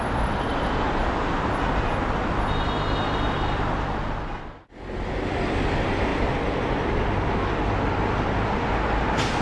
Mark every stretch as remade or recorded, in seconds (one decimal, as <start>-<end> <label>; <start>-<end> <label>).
0.0-9.4 recorded